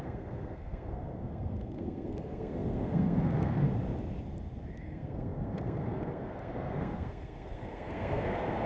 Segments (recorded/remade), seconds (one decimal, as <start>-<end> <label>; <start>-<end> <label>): 0.0-3.7 remade; 3.7-4.8 recorded; 4.8-8.7 remade